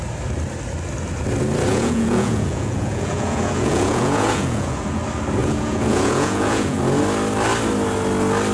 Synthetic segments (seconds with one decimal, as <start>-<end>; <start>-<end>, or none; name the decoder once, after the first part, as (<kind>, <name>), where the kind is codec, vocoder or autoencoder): 1.7-5.0 (vocoder, Vocos); 5.4-6.8